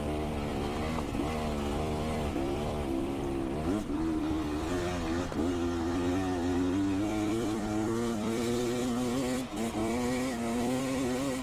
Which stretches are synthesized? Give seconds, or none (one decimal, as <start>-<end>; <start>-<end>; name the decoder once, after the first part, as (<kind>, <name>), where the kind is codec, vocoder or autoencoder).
0.5-1.2 (vocoder, BigVGAN v2); 1.7-4.7; 7.1-8.6; 9.8-10.8